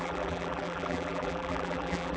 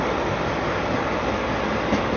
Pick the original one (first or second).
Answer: second